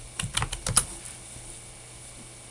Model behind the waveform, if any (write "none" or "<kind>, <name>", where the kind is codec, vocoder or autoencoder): none